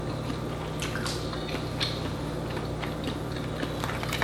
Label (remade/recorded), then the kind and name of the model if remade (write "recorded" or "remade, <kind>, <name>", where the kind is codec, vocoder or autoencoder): recorded